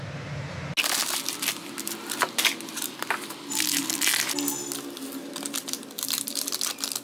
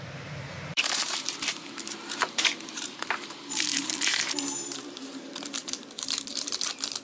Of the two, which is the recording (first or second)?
first